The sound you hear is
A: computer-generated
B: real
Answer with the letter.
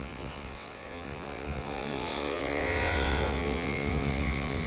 A